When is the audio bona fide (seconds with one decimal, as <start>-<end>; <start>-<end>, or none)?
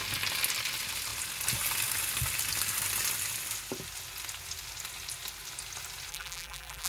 0.0-6.1